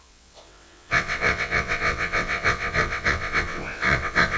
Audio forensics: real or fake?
fake